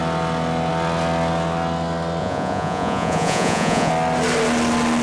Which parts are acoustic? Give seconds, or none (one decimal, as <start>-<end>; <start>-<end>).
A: 0.0-2.2; 3.9-5.0